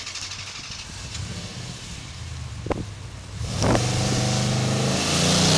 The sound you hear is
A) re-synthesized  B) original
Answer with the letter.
B